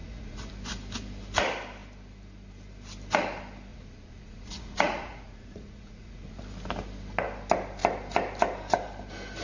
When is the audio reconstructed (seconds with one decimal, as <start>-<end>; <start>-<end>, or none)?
0.0-0.5; 3.7-6.4